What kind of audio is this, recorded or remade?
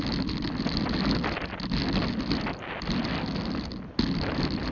recorded